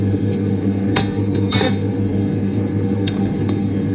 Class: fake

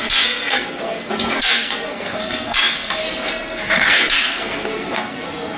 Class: fake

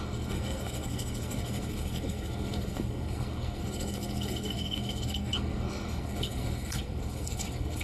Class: fake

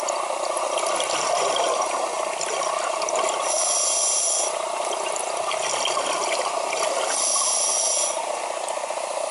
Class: real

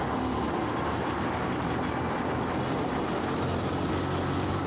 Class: real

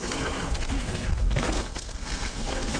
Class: fake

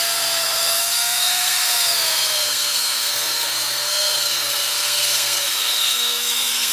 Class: fake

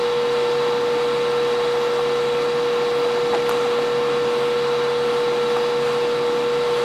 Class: real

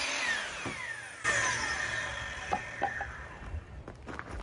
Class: real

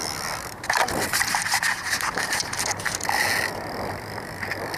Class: real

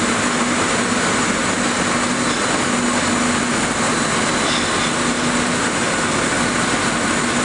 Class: real